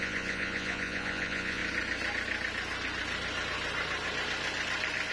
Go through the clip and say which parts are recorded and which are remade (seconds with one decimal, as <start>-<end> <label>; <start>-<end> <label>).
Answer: 0.0-1.6 remade; 1.6-5.1 recorded